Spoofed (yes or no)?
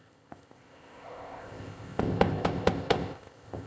yes